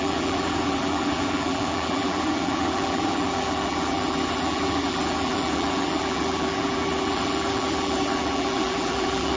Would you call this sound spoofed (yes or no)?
yes